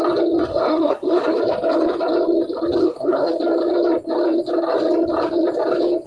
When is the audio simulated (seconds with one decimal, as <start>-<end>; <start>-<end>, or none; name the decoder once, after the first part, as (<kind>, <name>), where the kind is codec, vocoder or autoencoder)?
0.5-1.4 (codec, SNAC); 2.8-3.3